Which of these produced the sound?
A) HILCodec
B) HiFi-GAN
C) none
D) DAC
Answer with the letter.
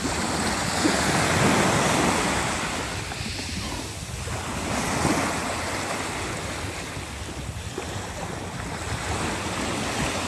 C